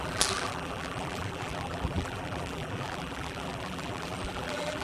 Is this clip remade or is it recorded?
remade